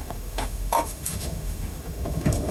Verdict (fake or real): fake